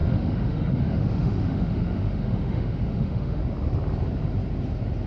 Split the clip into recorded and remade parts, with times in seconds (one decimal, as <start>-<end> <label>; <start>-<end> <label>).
0.0-3.4 remade; 3.4-5.1 recorded